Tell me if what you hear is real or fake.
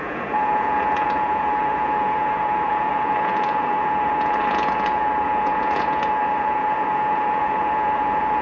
fake